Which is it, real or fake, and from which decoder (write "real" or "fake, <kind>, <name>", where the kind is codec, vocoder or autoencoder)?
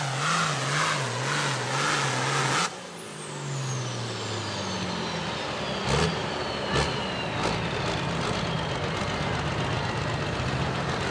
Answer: real